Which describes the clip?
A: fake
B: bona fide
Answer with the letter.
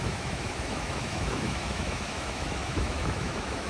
A